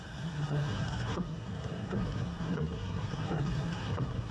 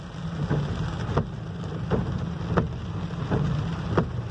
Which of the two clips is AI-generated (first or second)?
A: first